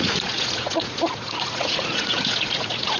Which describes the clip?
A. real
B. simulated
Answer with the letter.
B